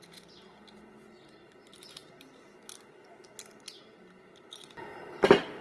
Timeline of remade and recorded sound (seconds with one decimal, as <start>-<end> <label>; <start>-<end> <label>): 0.0-5.6 recorded